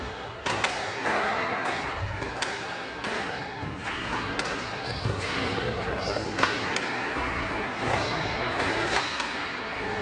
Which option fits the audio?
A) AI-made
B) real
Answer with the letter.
A